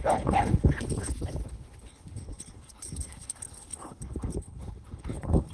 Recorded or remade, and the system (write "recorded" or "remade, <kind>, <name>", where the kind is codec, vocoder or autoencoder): remade, codec, HILCodec